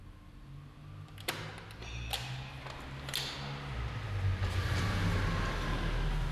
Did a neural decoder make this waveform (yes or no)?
no